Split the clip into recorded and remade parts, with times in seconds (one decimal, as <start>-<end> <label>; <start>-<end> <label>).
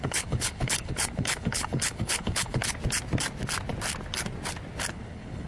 0.0-2.6 remade; 2.6-4.9 recorded; 4.9-5.5 remade